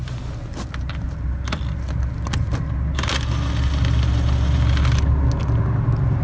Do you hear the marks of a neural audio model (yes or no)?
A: no